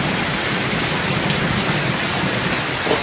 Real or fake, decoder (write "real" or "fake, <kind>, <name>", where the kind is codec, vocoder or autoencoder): real